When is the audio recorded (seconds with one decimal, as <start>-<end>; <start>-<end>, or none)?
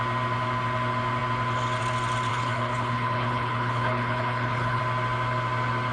0.0-2.3; 4.8-5.9